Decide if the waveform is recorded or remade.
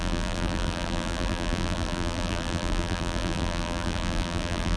remade